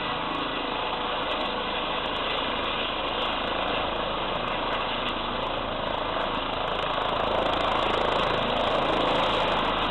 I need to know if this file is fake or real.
real